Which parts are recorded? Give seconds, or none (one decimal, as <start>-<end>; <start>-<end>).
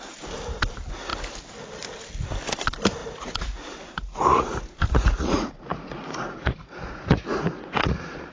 0.0-3.0